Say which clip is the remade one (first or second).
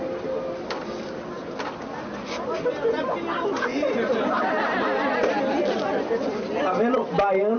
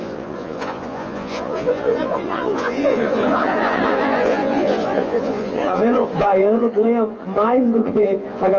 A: second